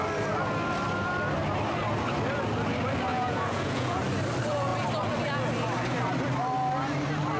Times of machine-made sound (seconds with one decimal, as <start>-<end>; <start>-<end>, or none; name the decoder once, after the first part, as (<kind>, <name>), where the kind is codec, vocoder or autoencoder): 3.1-4.0 (vocoder, Vocos)